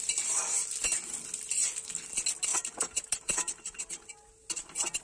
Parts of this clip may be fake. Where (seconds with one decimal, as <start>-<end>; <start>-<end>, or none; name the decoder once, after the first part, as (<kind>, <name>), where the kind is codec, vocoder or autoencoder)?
2.5-3.8 (vocoder, BigVGAN v2)